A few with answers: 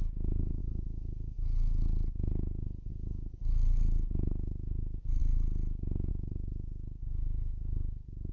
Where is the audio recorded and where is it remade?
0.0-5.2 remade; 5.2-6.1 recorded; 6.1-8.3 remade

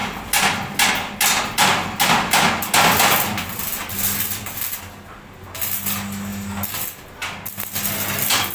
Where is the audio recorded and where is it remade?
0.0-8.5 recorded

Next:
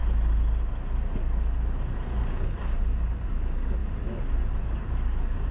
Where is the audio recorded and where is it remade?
0.0-3.3 recorded; 3.3-3.8 remade; 3.8-4.6 recorded; 4.6-5.5 remade

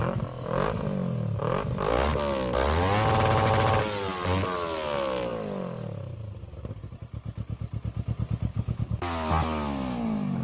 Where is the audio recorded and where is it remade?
0.0-8.5 recorded; 8.5-9.0 remade; 9.0-10.4 recorded